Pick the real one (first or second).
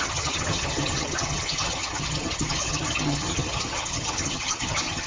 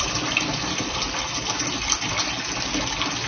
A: second